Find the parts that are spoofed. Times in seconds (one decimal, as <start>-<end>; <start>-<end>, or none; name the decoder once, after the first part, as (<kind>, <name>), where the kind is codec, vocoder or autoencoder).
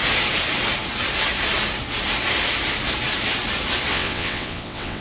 3.9-5.0 (vocoder, WaveNeXt)